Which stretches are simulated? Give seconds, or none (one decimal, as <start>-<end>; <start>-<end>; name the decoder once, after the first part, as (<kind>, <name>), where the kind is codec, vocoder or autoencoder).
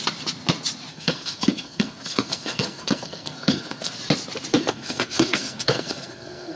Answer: 0.9-3.9 (codec, SNAC); 4.5-6.6